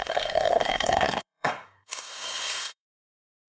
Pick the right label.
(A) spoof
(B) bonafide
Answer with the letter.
A